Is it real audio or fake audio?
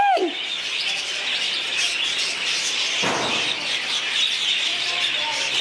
real